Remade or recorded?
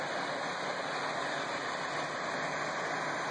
recorded